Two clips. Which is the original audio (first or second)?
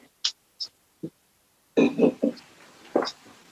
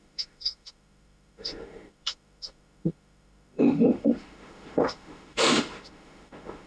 first